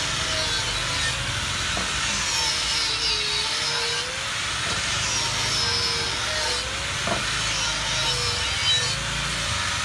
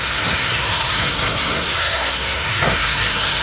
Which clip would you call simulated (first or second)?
second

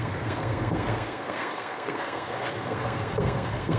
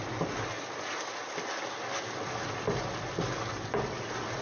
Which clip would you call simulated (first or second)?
first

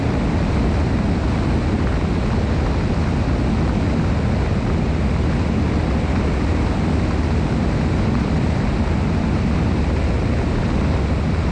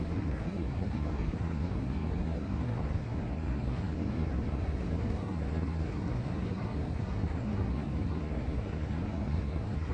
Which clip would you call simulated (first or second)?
second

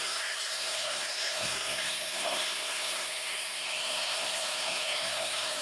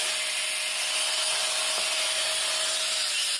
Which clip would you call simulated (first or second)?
first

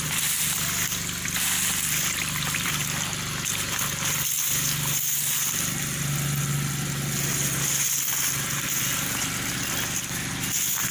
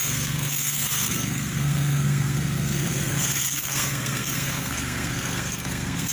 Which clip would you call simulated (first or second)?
second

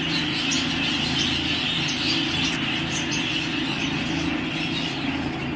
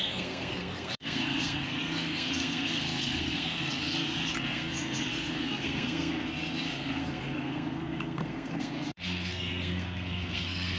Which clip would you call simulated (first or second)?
second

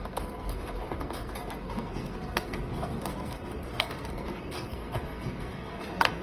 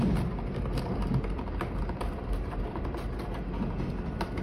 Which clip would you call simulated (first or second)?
first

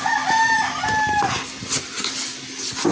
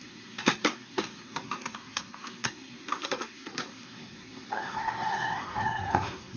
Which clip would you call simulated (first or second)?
second